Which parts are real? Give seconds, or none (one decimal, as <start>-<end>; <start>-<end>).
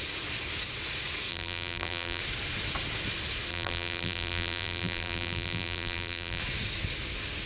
0.0-1.3; 2.2-3.5; 6.4-7.5